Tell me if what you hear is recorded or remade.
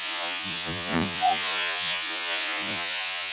remade